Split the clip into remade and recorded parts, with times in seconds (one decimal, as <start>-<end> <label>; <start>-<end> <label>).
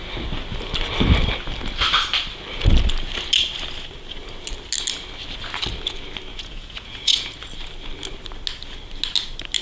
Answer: 0.0-6.3 recorded; 6.3-7.3 remade; 7.3-9.6 recorded